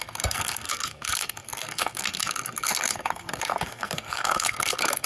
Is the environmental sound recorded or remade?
remade